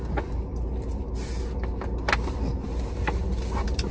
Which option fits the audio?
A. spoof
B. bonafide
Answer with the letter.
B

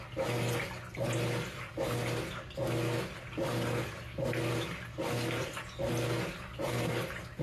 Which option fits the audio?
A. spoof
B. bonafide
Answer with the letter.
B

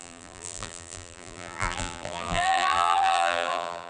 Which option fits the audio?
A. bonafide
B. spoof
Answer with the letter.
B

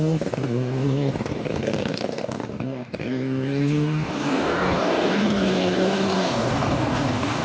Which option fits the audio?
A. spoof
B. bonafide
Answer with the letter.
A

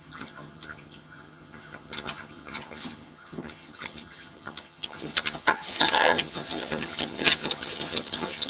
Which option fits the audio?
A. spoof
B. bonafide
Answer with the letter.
A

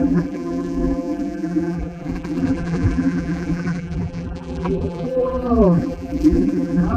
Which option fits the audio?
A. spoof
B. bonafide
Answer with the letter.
A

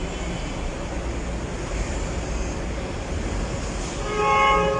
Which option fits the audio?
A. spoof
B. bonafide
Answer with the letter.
B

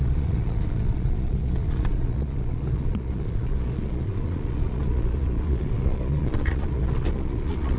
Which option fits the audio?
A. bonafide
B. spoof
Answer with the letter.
B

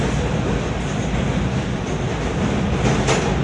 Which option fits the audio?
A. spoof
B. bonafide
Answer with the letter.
B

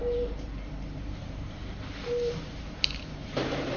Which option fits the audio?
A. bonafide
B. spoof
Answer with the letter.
B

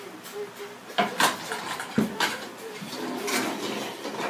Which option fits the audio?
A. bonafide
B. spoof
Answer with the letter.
A